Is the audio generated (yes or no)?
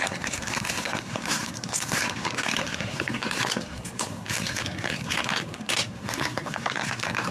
yes